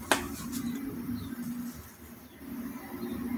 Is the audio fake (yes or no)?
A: no